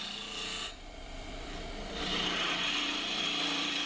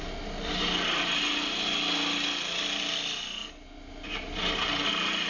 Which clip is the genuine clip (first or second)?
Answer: second